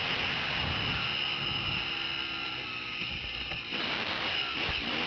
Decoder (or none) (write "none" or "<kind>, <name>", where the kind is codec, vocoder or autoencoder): none